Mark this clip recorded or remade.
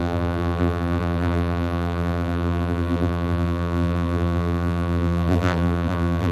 remade